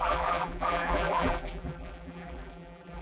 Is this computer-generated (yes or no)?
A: yes